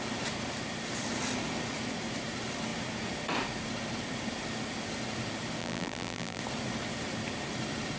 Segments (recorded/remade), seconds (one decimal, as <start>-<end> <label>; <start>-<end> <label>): 0.0-5.6 recorded; 5.6-6.4 remade; 6.4-8.0 recorded